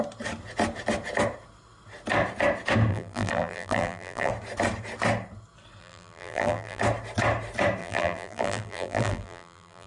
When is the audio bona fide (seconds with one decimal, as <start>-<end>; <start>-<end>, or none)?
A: 0.0-2.9; 4.3-5.8; 6.8-7.8